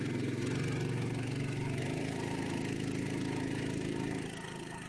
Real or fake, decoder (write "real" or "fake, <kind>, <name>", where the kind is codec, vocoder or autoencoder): real